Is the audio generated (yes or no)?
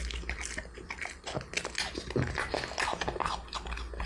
no